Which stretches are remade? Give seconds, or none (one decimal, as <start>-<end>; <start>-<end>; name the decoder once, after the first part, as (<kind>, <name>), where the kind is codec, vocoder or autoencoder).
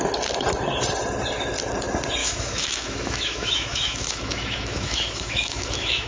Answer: 2.2-6.1 (autoencoder, DAC-VAE)